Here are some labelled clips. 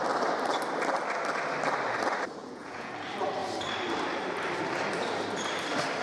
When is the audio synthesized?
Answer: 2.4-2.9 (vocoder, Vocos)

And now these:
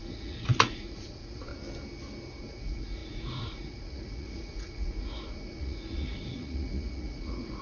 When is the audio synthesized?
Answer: 0.0-1.5 (vocoder, Vocos); 2.4-7.6

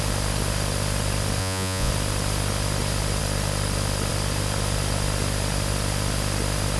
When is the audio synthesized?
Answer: 1.4-1.9 (vocoder, Vocos)

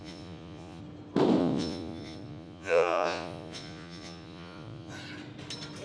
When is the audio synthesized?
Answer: 0.0-0.8 (vocoder, Vocos); 1.4-4.9

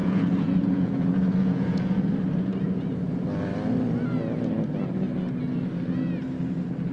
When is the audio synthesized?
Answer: 0.0-2.0 (vocoder, Vocos)

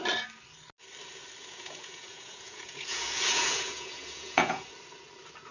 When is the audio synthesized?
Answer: 1.4-4.7 (vocoder, Vocos)

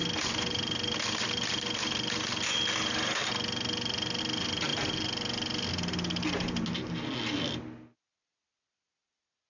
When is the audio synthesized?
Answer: none

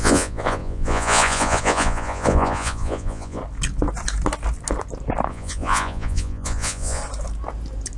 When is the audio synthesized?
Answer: 0.0-3.4 (vocoder, Vocos); 5.3-7.0